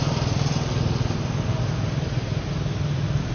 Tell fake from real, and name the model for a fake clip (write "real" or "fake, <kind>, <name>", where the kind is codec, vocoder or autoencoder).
real